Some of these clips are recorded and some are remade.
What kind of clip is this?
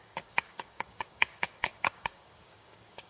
remade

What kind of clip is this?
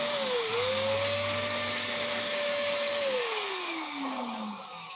remade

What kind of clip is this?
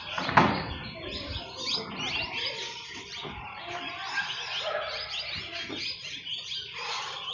recorded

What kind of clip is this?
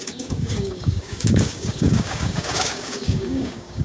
remade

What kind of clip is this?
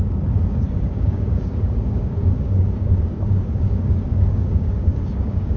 remade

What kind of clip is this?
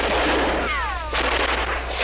recorded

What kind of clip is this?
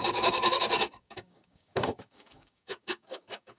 remade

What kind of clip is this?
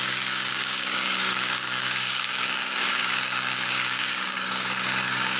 remade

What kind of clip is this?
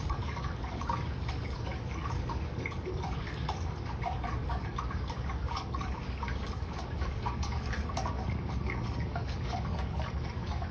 remade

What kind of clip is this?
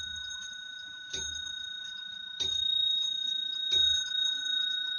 recorded